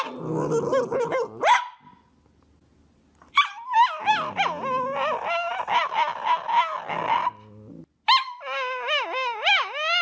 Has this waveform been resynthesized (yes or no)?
no